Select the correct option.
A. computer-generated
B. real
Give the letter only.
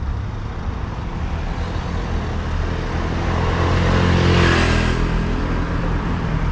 B